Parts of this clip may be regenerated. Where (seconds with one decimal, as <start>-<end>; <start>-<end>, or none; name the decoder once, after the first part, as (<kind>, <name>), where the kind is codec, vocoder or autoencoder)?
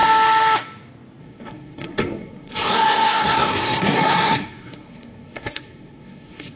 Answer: 1.2-6.6 (codec, SNAC)